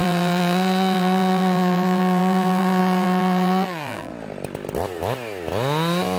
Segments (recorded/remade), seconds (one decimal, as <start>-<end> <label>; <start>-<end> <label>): 0.0-4.1 remade; 4.1-6.2 recorded